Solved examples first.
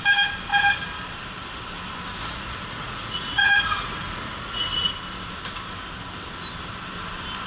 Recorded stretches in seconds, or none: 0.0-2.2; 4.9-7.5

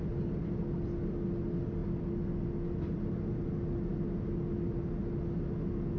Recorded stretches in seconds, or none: 0.0-6.0

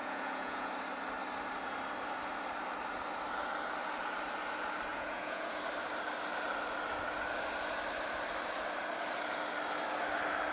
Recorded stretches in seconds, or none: 0.7-4.9; 5.6-10.5

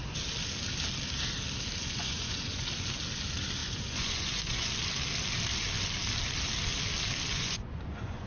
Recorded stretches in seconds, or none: 0.0-1.8; 2.7-3.6; 4.7-7.3